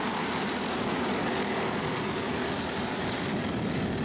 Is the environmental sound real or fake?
real